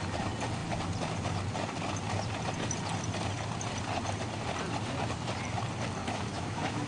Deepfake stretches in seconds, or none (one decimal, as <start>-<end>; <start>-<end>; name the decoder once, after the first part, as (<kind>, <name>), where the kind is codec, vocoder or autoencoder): 6.0-6.9 (autoencoder, DAC-VAE)